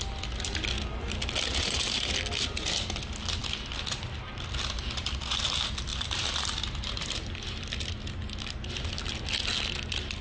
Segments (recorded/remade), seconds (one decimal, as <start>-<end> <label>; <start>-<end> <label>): 0.0-1.5 recorded; 1.5-2.1 remade; 2.1-5.9 recorded; 5.9-7.6 remade; 7.6-10.2 recorded